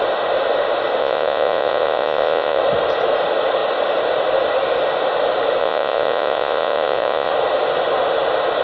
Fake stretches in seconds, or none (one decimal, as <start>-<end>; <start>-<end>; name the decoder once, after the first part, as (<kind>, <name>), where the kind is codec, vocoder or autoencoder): 1.0-2.6 (vocoder, Vocos); 5.6-7.3